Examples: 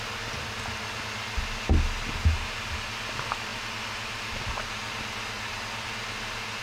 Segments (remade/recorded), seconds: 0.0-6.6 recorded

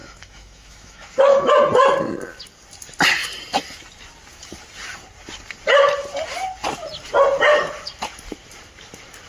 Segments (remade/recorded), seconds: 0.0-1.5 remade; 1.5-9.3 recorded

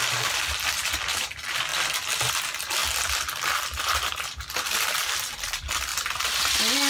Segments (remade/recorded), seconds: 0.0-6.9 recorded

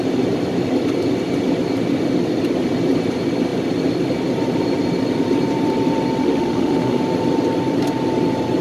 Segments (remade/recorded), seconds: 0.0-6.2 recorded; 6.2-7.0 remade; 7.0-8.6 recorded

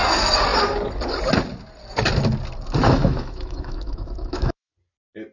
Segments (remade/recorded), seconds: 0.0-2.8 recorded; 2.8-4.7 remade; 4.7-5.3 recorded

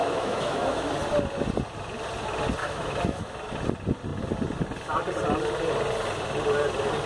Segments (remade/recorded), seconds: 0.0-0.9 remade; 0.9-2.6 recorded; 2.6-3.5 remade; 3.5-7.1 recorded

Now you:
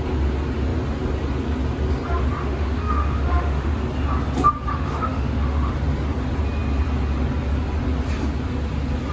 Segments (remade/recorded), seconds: 0.0-2.4 recorded; 2.4-3.8 remade; 3.8-4.7 recorded; 4.7-5.7 remade; 5.7-9.1 recorded